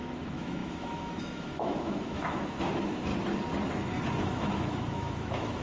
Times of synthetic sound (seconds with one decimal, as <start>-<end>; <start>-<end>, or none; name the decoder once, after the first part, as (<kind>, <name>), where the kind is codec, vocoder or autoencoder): 0.0-3.1 (autoencoder, DAC-VAE); 4.2-5.6